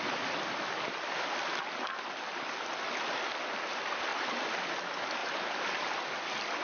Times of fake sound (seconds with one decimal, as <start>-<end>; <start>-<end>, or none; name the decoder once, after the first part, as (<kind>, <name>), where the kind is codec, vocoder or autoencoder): 4.1-4.7 (vocoder, BigVGAN v2); 5.2-6.0